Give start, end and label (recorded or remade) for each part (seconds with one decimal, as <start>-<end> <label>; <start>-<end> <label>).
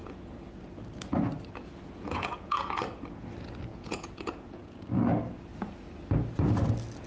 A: 0.0-0.5 remade; 0.5-1.6 recorded; 1.6-2.8 remade; 2.8-3.7 recorded; 3.7-4.8 remade; 4.8-7.1 recorded